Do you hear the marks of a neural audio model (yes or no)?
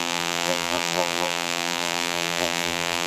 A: yes